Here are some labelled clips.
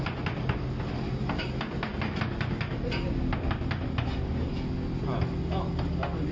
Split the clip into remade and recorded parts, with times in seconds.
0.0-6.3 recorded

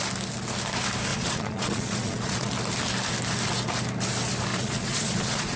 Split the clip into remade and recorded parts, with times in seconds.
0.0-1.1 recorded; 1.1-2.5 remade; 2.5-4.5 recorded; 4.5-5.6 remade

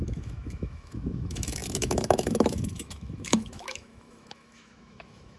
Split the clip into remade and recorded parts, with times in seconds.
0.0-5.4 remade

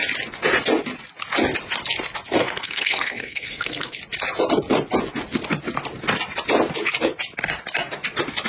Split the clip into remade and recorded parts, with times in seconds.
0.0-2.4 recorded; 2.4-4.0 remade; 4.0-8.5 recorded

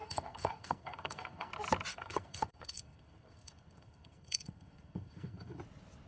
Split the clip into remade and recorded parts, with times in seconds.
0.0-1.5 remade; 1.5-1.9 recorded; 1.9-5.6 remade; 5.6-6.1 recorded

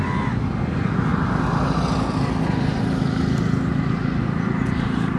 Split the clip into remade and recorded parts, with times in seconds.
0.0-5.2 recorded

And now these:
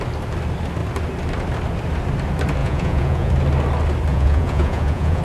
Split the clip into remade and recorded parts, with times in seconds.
0.0-2.6 recorded; 2.6-3.3 remade; 3.3-4.1 recorded; 4.1-5.2 remade